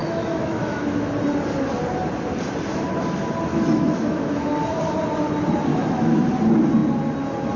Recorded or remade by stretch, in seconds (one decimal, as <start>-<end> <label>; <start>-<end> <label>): 0.0-1.1 remade; 1.1-3.5 recorded; 3.5-4.5 remade; 4.5-5.7 recorded; 5.7-6.2 remade; 6.2-7.6 recorded